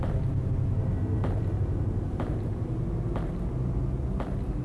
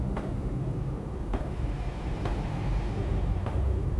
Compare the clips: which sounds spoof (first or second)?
second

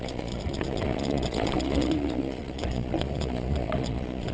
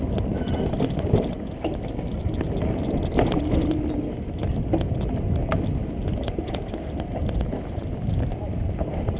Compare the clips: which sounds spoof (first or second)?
first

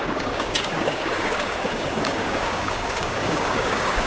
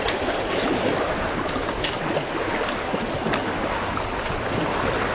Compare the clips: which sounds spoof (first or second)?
first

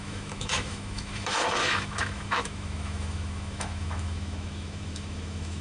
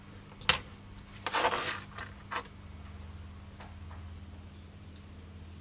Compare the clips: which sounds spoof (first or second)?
first